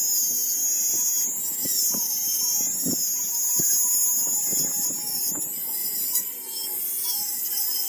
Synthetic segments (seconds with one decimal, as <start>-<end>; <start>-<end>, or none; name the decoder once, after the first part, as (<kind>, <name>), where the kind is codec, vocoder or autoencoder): 5.8-7.1 (vocoder, BigVGAN v2)